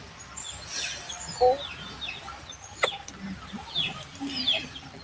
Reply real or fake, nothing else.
real